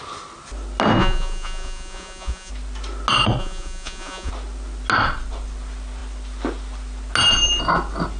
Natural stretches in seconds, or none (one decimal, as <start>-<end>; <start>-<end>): 0.0-1.0; 2.5-3.4; 4.3-8.2